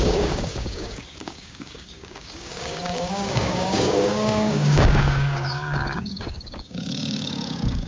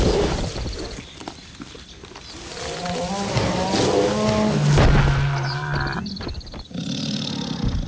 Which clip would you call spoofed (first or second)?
first